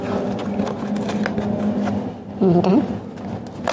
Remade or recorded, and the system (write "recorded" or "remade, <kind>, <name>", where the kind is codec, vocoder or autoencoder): recorded